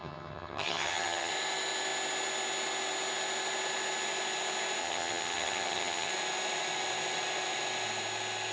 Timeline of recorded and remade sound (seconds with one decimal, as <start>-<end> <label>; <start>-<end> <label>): 0.0-1.3 remade; 1.3-4.8 recorded; 4.8-6.1 remade; 6.1-8.5 recorded

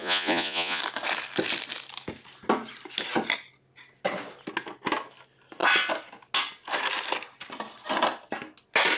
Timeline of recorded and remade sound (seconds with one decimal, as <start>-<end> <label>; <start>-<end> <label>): 0.0-0.8 remade; 0.8-9.0 recorded

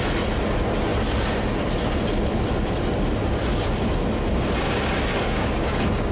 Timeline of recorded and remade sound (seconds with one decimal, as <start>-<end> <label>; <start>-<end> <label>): 0.0-5.1 recorded; 5.1-6.1 remade

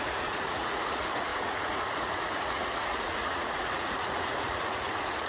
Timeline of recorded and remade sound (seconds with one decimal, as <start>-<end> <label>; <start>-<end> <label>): 0.0-5.3 remade

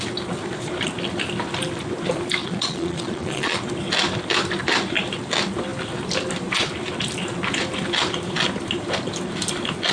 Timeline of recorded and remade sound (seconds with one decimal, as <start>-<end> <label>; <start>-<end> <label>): 0.0-2.4 recorded; 2.4-3.6 remade; 3.6-9.9 recorded

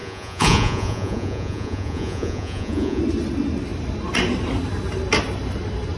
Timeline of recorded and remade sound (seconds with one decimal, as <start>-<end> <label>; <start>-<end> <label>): 0.0-3.0 remade; 3.0-6.0 recorded

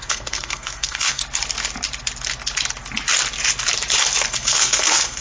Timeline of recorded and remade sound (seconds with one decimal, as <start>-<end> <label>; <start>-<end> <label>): 0.0-1.2 remade; 1.2-4.3 recorded; 4.3-5.2 remade

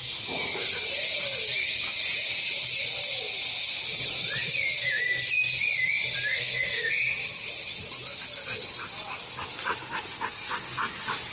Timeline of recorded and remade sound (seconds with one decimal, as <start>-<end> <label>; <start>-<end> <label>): 0.0-6.3 recorded; 6.3-6.9 remade; 6.9-11.3 recorded